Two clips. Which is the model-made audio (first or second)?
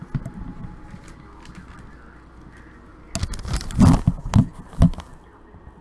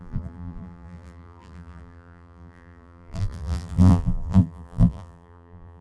second